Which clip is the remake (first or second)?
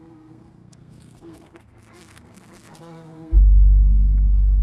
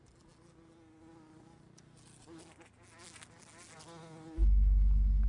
first